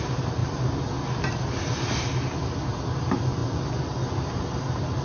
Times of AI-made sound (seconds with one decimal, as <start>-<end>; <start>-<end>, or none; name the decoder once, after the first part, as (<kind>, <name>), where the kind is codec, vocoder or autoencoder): none